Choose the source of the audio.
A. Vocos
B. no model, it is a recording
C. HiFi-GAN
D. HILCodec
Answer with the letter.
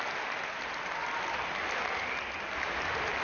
B